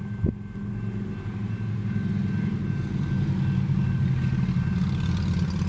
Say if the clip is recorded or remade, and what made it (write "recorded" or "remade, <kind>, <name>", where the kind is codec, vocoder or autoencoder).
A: recorded